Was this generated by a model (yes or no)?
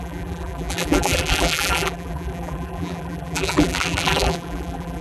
yes